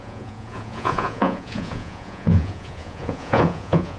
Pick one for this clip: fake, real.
fake